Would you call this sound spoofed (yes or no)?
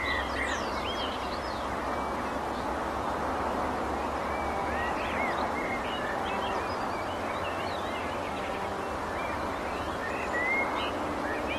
no